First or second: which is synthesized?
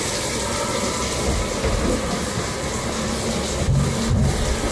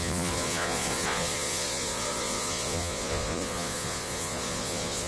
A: second